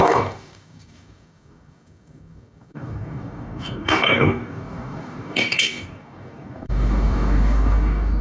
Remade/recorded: remade